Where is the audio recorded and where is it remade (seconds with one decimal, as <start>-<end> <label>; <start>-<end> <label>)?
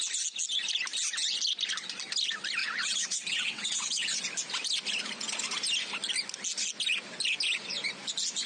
0.0-2.6 recorded; 2.6-4.2 remade; 4.2-8.5 recorded